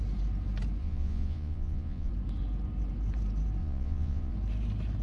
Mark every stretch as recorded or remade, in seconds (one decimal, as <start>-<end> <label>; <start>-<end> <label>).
0.0-0.8 recorded; 0.8-2.1 remade; 2.1-3.6 recorded; 3.6-4.3 remade; 4.3-5.0 recorded